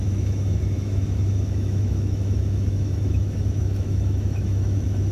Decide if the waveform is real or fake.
fake